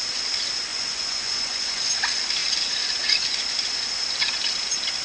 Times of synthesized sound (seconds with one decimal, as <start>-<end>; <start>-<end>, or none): 0.7-1.8